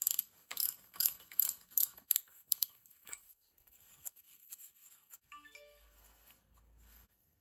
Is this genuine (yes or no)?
no